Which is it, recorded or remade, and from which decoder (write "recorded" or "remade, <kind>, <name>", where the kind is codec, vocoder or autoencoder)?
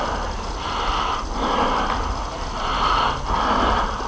recorded